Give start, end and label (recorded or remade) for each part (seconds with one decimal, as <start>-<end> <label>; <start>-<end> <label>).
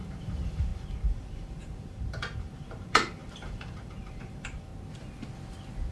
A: 0.0-4.7 remade; 4.7-5.9 recorded